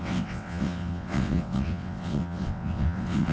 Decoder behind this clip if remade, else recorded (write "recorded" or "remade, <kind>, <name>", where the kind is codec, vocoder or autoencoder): remade, vocoder, WaveNeXt